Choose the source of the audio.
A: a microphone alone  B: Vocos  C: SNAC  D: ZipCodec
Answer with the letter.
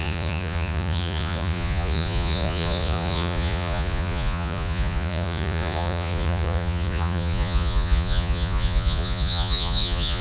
B